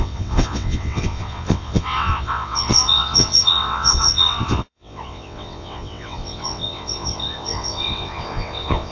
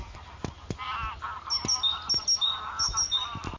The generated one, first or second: first